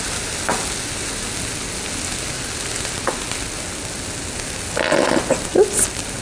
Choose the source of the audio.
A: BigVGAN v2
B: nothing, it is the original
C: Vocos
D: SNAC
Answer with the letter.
B